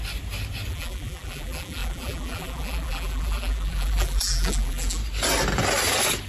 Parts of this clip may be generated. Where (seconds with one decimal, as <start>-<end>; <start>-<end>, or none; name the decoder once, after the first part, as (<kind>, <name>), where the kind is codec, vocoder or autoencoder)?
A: 0.7-5.0 (vocoder, BigVGAN v2)